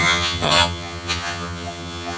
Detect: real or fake fake